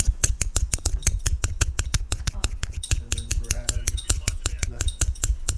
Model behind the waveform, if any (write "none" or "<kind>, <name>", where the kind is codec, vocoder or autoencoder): vocoder, Vocos